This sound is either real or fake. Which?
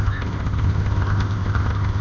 fake